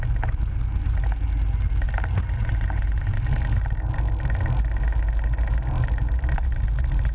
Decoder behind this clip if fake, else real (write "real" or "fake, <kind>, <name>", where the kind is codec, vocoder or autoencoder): real